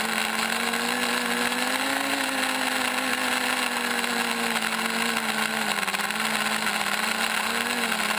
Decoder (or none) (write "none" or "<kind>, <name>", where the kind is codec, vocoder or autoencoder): none